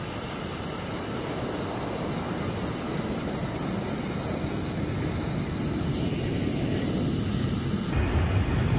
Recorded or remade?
recorded